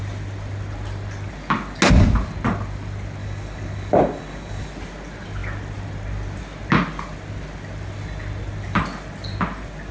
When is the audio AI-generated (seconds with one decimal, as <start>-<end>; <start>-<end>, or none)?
3.2-4.7